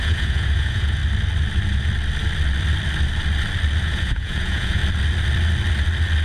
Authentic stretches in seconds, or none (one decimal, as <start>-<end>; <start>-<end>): 1.0-3.8; 4.8-6.2